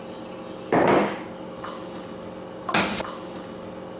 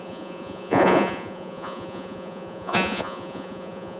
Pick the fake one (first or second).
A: second